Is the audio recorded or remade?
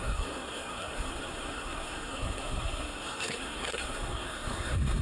remade